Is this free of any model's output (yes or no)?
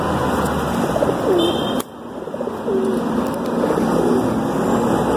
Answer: yes